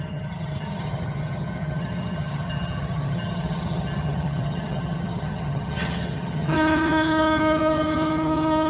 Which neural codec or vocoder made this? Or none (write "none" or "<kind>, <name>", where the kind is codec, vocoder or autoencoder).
vocoder, HiFi-GAN